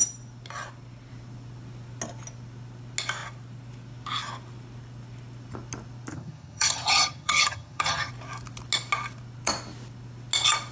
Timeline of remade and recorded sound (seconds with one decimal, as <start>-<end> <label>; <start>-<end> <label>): 0.0-6.1 recorded; 6.1-8.1 remade; 8.1-10.7 recorded